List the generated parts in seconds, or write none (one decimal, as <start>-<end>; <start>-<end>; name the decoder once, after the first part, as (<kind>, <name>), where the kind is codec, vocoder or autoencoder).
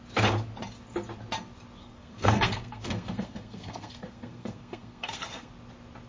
1.8-5.5 (codec, SNAC)